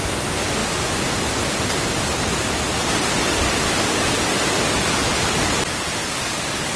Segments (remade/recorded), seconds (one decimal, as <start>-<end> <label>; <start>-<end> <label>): 0.0-6.0 recorded; 6.0-6.8 remade